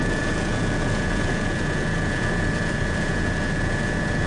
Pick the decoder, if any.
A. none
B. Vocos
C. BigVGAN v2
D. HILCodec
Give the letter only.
B